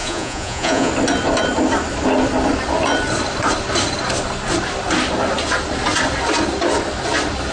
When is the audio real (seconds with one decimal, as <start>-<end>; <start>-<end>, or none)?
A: 0.9-7.5